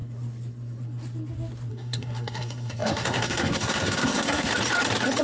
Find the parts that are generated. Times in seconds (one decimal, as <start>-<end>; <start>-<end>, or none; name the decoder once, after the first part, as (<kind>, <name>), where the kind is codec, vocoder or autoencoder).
1.7-4.5 (codec, SNAC)